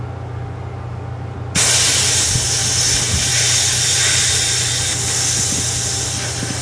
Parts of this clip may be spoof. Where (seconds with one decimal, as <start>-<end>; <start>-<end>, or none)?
none